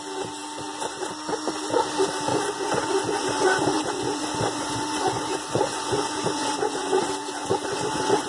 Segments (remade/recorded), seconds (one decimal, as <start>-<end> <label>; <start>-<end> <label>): 0.0-2.3 recorded; 2.3-7.0 remade; 7.0-7.4 recorded; 7.4-8.3 remade